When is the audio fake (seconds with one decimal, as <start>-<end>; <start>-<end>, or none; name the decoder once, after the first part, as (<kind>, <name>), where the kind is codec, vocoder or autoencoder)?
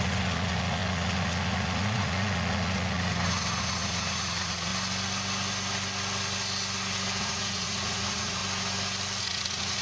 0.0-4.7 (vocoder, Vocos); 7.2-8.4; 9.2-9.8